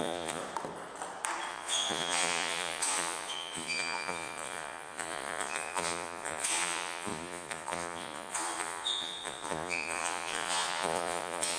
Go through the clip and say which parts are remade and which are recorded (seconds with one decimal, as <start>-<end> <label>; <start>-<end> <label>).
0.0-0.4 remade; 0.4-1.5 recorded; 1.5-11.6 remade